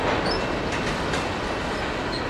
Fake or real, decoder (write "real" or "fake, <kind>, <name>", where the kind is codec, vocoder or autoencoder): real